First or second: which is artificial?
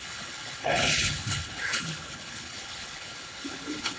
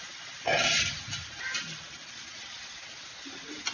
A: first